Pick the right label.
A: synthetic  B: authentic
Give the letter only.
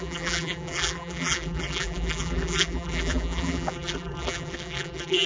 A